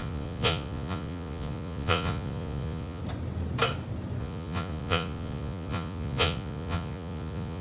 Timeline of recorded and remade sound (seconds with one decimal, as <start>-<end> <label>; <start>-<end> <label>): 0.0-3.0 remade; 3.0-4.2 recorded; 4.2-7.6 remade